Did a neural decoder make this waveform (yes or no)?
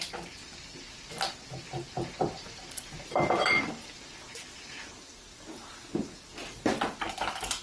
no